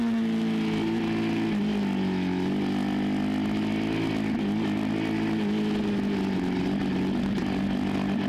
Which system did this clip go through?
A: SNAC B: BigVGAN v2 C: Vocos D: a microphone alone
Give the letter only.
D